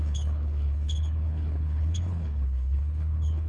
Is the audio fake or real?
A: fake